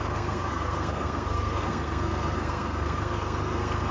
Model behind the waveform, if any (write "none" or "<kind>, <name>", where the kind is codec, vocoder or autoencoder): codec, SNAC